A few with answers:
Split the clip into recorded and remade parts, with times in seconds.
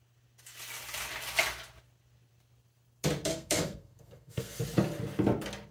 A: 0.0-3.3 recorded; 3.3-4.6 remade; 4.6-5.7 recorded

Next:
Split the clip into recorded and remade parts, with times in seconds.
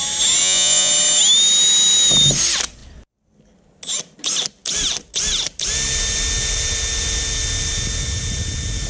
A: 0.0-0.4 recorded; 0.4-0.9 remade; 0.9-8.9 recorded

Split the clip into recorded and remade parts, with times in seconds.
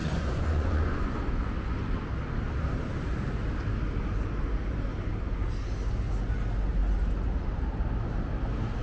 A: 0.0-1.2 remade; 1.2-8.8 recorded